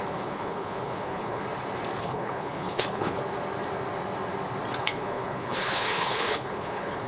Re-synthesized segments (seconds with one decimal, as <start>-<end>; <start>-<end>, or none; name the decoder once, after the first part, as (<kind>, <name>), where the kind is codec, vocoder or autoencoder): 0.0-1.4 (codec, HILCodec); 2.0-3.2; 4.8-7.1